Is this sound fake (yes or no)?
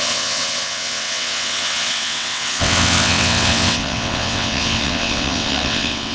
yes